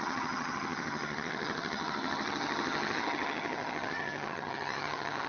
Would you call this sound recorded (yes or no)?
no